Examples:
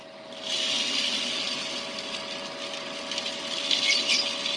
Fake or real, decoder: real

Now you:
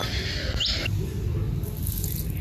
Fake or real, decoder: real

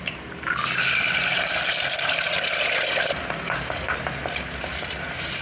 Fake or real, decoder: fake, vocoder, BigVGAN v2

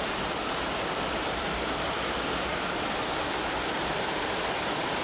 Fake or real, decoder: fake, vocoder, BigVGAN v2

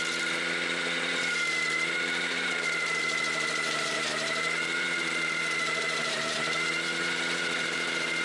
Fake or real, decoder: fake, vocoder, BigVGAN v2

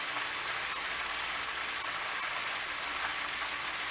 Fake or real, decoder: real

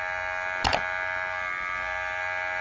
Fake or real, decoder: real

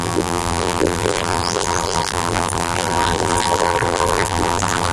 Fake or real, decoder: fake, vocoder, BigVGAN v2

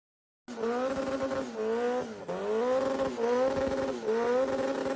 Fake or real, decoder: real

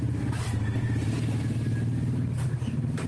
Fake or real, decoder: real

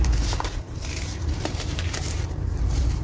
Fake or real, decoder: fake, vocoder, BigVGAN v2